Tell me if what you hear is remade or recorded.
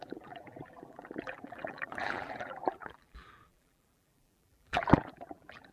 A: remade